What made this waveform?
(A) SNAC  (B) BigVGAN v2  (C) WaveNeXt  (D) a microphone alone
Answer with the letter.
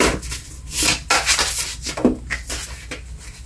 D